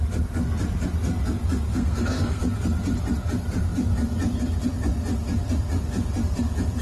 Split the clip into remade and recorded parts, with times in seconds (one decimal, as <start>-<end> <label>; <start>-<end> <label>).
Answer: 0.0-1.7 recorded; 1.7-2.4 remade; 2.4-6.8 recorded